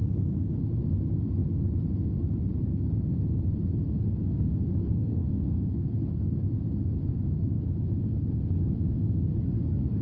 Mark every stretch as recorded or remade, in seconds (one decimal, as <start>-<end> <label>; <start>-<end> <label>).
0.0-4.8 recorded; 4.8-6.0 remade; 6.0-7.1 recorded; 7.1-7.6 remade; 7.6-10.0 recorded